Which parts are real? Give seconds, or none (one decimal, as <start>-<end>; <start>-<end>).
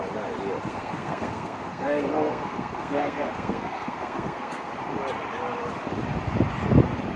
0.0-0.7; 4.7-7.2